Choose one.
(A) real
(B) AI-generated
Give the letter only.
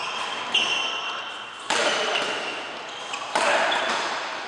A